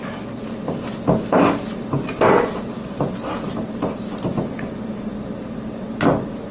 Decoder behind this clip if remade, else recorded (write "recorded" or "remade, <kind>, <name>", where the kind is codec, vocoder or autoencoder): recorded